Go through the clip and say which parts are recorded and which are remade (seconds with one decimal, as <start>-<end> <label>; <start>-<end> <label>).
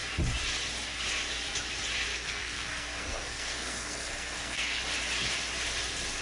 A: 0.0-2.1 recorded; 2.1-4.8 remade; 4.8-6.2 recorded